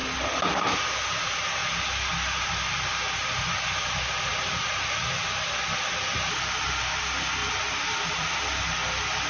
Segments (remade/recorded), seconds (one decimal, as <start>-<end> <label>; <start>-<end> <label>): 0.0-4.3 recorded; 4.3-5.0 remade; 5.0-7.4 recorded; 7.4-8.3 remade; 8.3-9.3 recorded

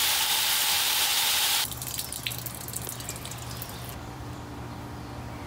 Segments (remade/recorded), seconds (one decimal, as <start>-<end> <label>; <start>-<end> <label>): 0.0-1.1 recorded; 1.1-4.4 remade; 4.4-5.5 recorded

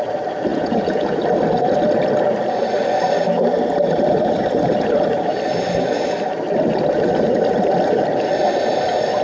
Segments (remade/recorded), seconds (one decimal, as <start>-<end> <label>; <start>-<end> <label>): 0.0-0.5 recorded; 0.5-1.2 remade; 1.2-9.2 recorded

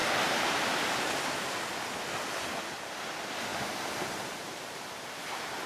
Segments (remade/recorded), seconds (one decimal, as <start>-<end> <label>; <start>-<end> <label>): 0.0-5.7 recorded

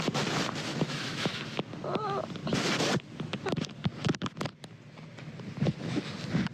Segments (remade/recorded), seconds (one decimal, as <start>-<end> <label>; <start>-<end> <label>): 0.0-0.7 recorded; 0.7-1.4 remade; 1.4-6.5 recorded

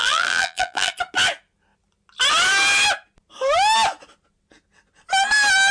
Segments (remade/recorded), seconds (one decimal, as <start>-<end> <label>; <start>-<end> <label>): 0.0-0.9 remade; 0.9-5.7 recorded

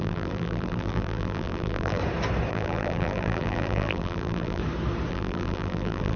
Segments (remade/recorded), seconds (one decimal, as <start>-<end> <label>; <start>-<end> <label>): 0.0-2.0 remade; 2.0-2.5 recorded; 2.5-4.6 remade; 4.6-5.1 recorded; 5.1-6.2 remade